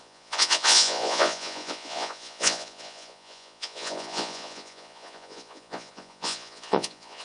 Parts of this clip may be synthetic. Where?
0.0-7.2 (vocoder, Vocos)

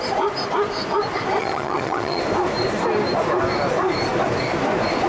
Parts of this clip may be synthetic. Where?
1.4-2.2 (vocoder, HiFi-GAN)

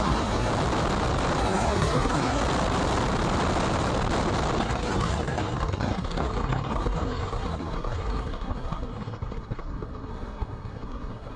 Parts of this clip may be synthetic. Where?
0.0-0.5 (codec, SNAC); 1.4-2.4; 4.6-11.4

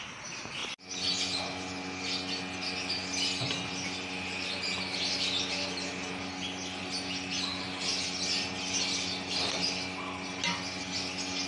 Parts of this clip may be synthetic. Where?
7.5-8.1 (vocoder, BigVGAN v2)

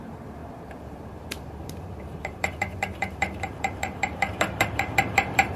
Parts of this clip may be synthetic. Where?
0.0-5.6 (vocoder, BigVGAN v2)